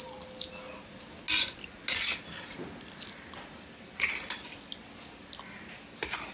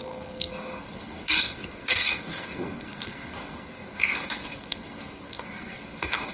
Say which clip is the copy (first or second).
second